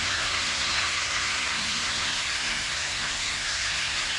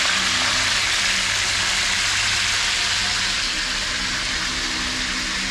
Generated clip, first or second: first